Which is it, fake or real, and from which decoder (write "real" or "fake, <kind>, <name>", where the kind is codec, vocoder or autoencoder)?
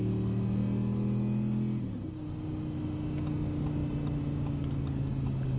real